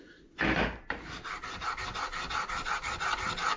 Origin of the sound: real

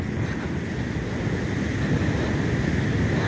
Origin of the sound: real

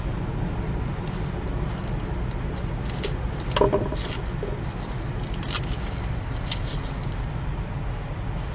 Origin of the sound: real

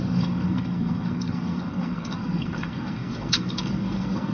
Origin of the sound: fake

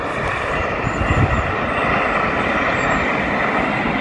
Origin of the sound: real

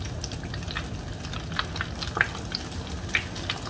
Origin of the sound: real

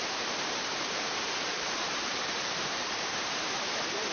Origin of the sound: fake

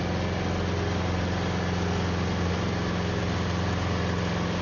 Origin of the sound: real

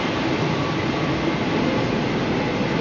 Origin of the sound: real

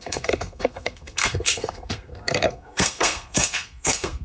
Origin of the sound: fake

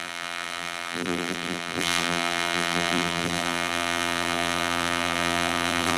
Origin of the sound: fake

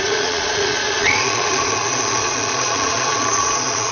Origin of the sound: fake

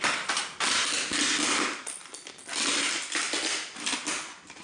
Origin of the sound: real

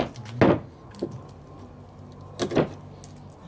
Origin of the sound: real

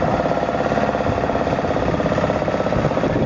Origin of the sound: real